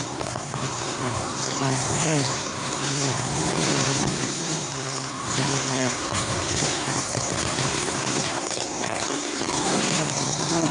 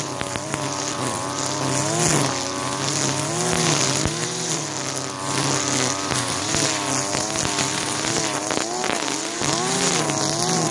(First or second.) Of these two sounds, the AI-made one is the first